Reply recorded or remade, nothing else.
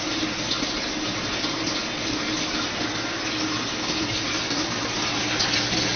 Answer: recorded